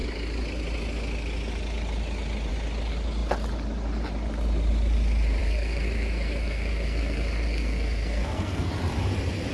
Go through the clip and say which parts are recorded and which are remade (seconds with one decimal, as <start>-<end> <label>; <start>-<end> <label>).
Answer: 0.0-5.4 recorded; 5.4-8.7 remade; 8.7-9.5 recorded

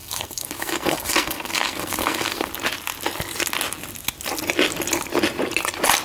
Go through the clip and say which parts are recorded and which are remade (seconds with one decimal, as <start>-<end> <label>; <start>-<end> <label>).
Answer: 0.0-2.5 remade; 2.5-6.0 recorded

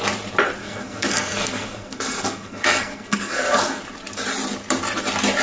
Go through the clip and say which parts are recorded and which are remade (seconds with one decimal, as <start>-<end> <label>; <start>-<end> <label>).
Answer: 0.0-0.6 recorded; 0.6-3.8 remade; 3.8-5.4 recorded

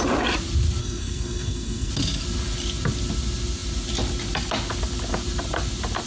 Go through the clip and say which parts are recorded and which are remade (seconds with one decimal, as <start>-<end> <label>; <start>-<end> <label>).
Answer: 0.0-0.8 recorded; 0.8-1.9 remade; 1.9-6.1 recorded

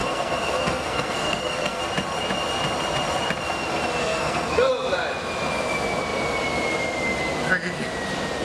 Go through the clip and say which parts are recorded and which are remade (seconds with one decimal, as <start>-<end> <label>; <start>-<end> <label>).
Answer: 0.0-1.8 remade; 1.8-4.0 recorded; 4.0-4.7 remade; 4.7-8.4 recorded

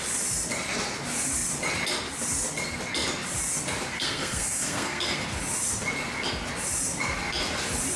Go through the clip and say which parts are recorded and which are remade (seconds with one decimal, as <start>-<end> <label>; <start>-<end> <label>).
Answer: 0.0-3.9 recorded; 3.9-5.2 remade; 5.2-8.0 recorded